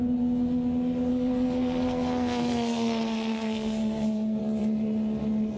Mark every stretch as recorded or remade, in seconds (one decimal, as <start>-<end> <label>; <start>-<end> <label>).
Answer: 0.0-1.1 recorded; 1.1-4.4 remade; 4.4-5.6 recorded